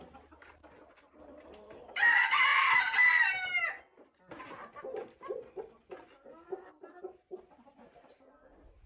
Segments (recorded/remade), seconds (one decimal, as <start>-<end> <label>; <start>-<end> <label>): 0.0-8.9 recorded